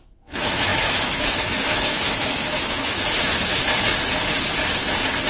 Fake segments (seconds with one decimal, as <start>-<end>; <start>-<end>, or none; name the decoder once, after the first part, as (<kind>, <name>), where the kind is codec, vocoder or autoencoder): 0.0-3.6 (autoencoder, DAC-VAE)